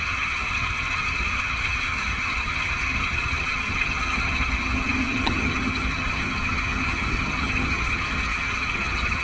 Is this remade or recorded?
remade